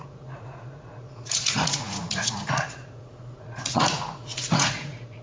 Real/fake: fake